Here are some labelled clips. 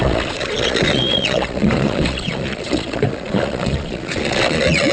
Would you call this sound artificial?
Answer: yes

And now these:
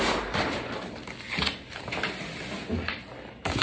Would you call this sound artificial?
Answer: no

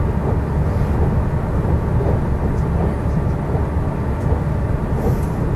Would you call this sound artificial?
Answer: no